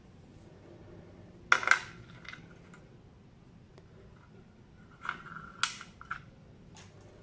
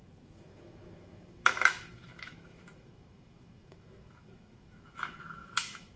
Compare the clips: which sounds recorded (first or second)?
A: first